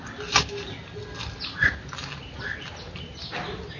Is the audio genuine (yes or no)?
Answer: yes